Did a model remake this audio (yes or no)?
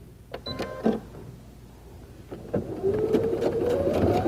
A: no